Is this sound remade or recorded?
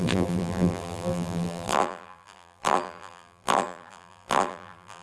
remade